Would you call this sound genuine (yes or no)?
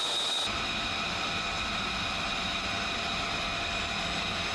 yes